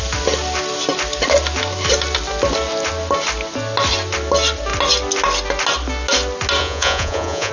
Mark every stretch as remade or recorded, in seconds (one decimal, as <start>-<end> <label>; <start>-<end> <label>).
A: 0.0-6.6 recorded; 6.6-7.5 remade